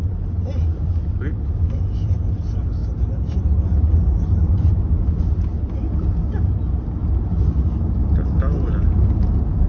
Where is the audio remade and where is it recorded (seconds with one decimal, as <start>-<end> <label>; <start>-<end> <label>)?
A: 0.0-2.8 recorded; 2.8-5.2 remade; 5.2-9.7 recorded

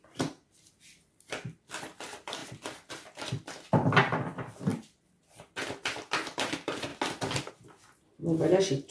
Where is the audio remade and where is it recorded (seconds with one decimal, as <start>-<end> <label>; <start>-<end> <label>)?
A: 0.0-6.9 remade; 6.9-7.5 recorded; 7.5-8.2 remade; 8.2-8.9 recorded

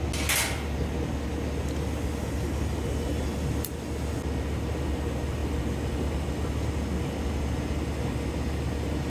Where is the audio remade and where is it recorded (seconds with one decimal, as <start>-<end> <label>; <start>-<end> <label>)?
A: 0.0-9.1 recorded

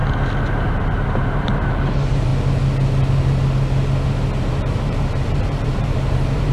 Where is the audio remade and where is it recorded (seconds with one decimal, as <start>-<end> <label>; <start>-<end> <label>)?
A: 0.0-0.7 recorded; 0.7-2.3 remade; 2.3-4.4 recorded; 4.4-6.5 remade